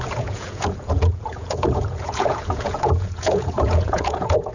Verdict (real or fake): fake